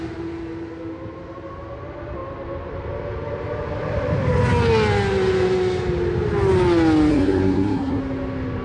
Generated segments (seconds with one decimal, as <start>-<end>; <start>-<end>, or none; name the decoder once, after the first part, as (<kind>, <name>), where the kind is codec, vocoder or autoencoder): 7.1-8.0 (codec, SNAC)